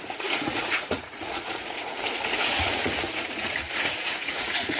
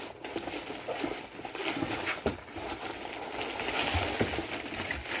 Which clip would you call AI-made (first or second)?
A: first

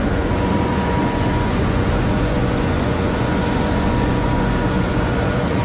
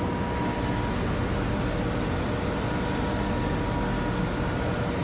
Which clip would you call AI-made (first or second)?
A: first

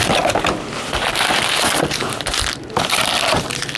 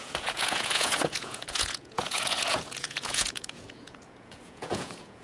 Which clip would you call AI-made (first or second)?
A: second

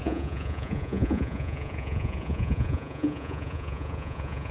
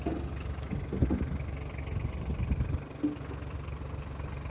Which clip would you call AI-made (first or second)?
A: first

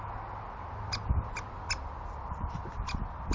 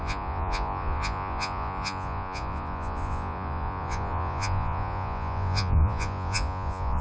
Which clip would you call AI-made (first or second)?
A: second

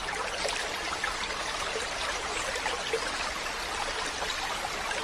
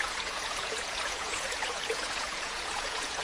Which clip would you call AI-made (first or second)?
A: second